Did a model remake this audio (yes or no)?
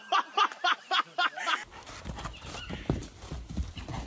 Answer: no